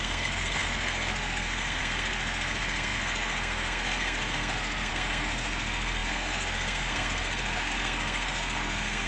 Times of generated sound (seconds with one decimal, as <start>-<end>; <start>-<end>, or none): 0.0-9.1